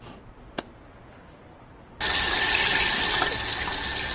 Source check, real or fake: real